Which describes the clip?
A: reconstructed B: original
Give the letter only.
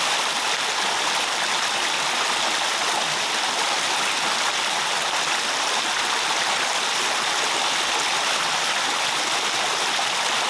B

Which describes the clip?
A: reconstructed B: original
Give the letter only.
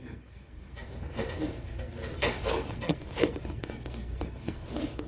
A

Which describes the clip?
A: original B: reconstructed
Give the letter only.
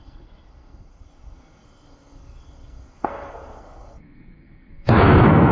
B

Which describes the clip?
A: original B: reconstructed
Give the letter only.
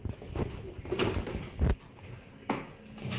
A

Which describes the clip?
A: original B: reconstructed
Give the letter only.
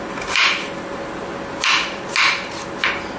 A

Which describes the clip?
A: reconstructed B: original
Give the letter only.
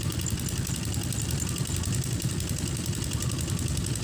B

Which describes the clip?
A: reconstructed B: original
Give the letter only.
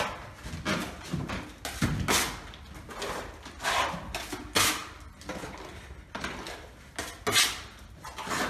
B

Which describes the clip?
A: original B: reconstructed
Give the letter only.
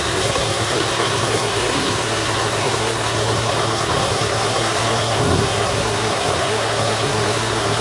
B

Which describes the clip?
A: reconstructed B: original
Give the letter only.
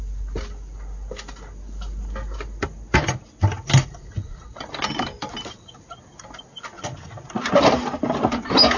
B